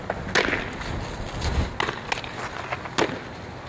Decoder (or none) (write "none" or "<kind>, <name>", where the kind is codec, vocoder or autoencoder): none